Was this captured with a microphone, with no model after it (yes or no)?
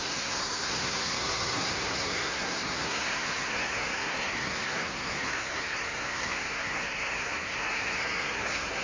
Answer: no